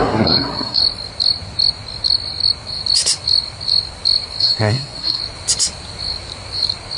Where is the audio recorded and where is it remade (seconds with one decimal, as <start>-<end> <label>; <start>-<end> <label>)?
0.0-0.8 remade; 0.8-4.4 recorded; 4.4-5.2 remade; 5.2-7.0 recorded